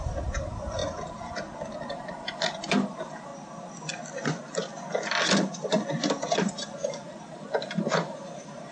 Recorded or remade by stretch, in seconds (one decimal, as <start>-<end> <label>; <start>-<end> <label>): 0.0-0.8 remade; 0.8-1.9 recorded; 1.9-3.3 remade; 3.3-6.4 recorded; 6.4-8.7 remade